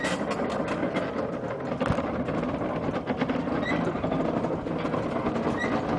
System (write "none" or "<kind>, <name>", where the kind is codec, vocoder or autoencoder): none